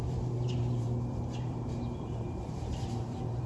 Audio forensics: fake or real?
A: fake